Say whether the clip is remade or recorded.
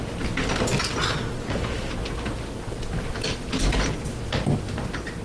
recorded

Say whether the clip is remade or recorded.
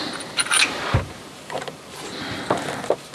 recorded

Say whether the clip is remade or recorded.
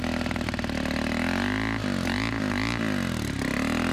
recorded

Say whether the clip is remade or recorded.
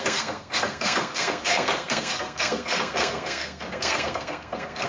remade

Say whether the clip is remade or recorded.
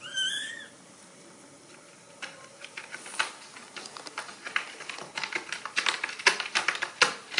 recorded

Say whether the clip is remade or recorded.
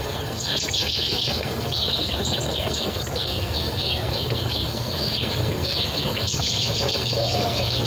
remade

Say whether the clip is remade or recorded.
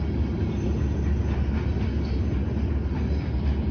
recorded